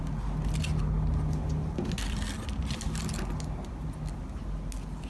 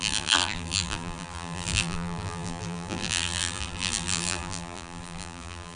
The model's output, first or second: second